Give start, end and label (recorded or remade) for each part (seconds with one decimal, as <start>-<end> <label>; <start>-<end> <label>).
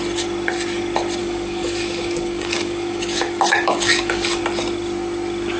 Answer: 0.0-1.2 recorded; 1.2-4.4 remade; 4.4-5.6 recorded